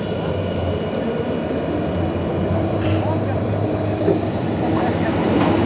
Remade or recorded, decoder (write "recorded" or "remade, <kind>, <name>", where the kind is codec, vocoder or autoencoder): remade, vocoder, BigVGAN v2